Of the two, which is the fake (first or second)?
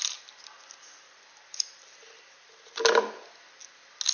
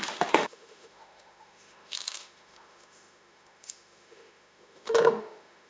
second